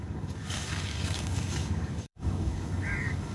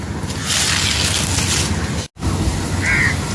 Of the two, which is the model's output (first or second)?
first